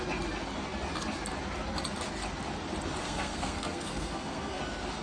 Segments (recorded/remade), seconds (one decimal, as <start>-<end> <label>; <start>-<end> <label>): 0.0-3.0 recorded; 3.0-4.6 remade; 4.6-5.0 recorded